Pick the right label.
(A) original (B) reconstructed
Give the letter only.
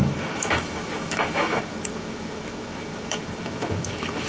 B